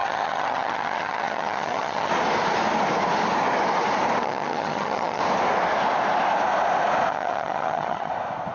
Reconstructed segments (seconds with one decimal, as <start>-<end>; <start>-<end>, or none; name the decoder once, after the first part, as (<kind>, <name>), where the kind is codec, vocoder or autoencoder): 0.0-2.1 (vocoder, HiFi-GAN); 4.2-5.2; 7.1-8.1